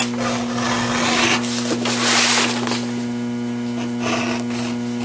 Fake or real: real